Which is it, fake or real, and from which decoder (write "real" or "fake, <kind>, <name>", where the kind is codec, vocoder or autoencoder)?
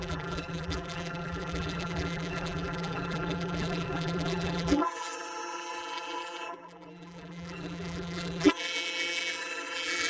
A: fake, vocoder, BigVGAN v2